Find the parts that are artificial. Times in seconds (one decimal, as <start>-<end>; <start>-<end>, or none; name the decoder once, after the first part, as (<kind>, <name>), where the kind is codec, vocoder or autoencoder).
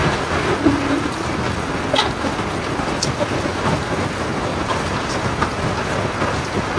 3.5-4.0 (vocoder, BigVGAN v2); 4.5-5.1